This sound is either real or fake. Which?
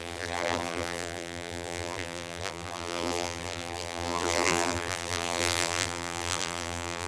fake